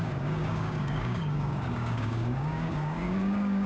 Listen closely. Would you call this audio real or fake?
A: fake